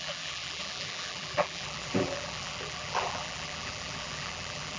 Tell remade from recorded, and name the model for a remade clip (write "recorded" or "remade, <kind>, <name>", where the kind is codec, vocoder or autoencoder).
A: remade, vocoder, BigVGAN v2